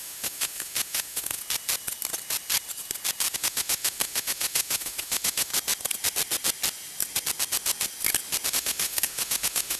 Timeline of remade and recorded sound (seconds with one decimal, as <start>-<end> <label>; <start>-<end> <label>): 0.0-1.4 remade; 1.4-3.3 recorded; 3.3-5.5 remade; 5.5-8.5 recorded; 8.5-9.8 remade